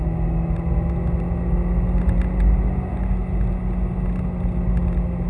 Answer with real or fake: real